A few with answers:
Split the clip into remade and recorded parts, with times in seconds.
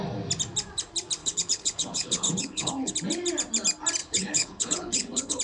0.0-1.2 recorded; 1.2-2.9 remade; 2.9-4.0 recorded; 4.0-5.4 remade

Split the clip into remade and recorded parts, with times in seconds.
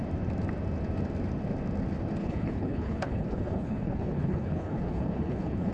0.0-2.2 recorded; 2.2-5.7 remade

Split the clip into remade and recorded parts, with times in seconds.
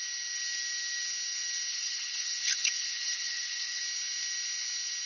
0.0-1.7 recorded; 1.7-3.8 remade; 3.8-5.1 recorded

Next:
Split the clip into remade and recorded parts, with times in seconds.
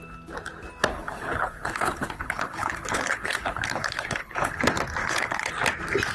0.0-0.9 recorded; 0.9-4.6 remade; 4.6-5.0 recorded; 5.0-5.5 remade; 5.5-6.1 recorded